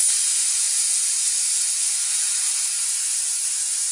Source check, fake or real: real